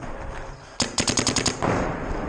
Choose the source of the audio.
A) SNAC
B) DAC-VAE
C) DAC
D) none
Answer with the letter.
D